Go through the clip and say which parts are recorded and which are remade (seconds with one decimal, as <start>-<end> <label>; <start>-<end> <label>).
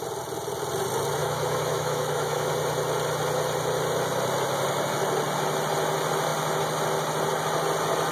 0.0-1.2 recorded; 1.2-2.5 remade; 2.5-8.1 recorded